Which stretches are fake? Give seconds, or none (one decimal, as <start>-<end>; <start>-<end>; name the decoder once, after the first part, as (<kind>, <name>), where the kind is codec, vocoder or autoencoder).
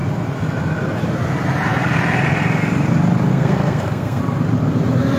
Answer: 3.3-4.2 (codec, SNAC)